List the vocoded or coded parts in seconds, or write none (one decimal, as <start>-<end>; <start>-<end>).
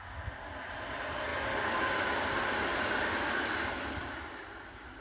none